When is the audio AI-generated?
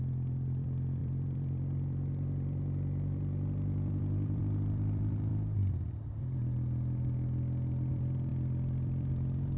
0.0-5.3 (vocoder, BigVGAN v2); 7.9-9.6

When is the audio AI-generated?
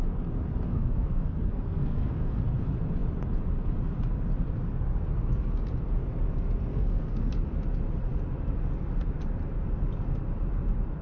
0.7-2.4 (codec, SNAC); 6.7-7.3